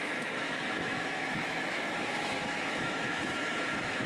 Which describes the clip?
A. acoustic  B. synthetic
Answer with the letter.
B